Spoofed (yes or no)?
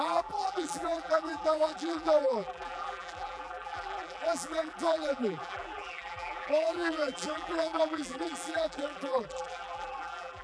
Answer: yes